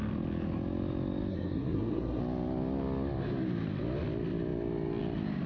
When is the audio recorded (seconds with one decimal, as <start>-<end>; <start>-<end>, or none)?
0.0-1.3; 2.2-5.5